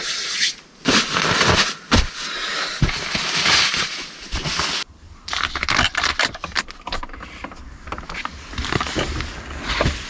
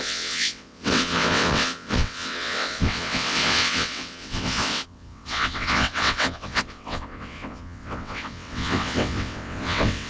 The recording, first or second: first